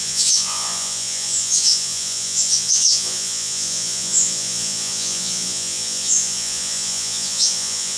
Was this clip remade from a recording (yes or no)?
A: yes